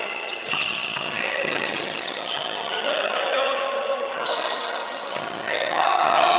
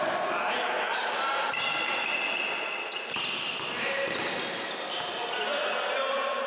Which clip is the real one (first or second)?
second